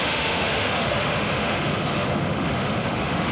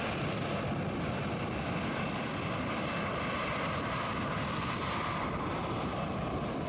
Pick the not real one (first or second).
first